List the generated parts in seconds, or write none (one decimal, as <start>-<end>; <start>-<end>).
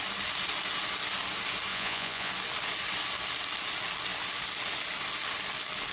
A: 1.7-2.3